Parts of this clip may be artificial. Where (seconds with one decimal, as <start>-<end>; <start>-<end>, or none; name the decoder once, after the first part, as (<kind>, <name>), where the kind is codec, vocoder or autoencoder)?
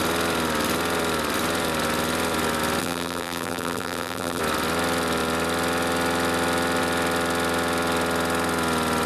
2.8-4.4 (vocoder, BigVGAN v2)